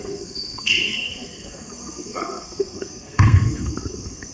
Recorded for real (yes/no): no